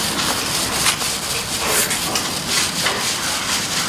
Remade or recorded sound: recorded